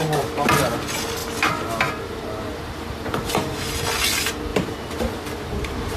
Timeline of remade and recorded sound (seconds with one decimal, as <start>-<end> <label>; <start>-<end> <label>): 0.0-2.5 recorded; 2.5-3.6 remade; 3.6-4.5 recorded; 4.5-6.0 remade